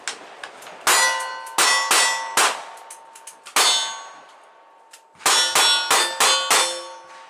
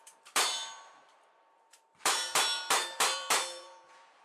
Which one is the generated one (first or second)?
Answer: second